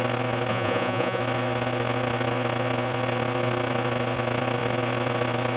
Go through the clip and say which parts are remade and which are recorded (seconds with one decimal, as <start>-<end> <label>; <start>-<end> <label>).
0.0-0.5 recorded; 0.5-1.2 remade; 1.2-5.6 recorded